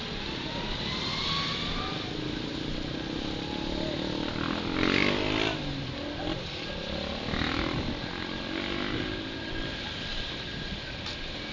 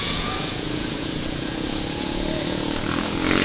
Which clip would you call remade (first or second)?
second